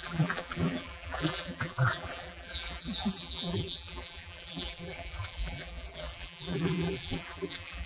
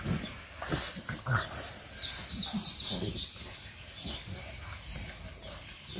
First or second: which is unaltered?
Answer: second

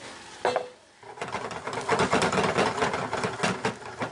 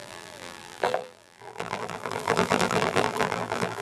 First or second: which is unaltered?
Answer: first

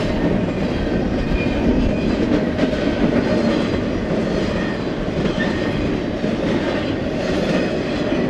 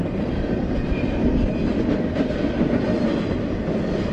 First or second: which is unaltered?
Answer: first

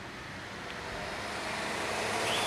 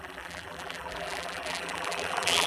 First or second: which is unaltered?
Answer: first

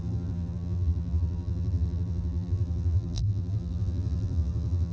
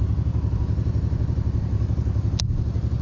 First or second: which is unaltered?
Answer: second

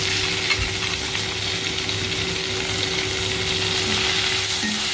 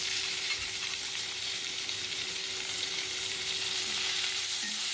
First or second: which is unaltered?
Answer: first